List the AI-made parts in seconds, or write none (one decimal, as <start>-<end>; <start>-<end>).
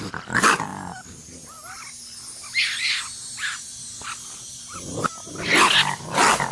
none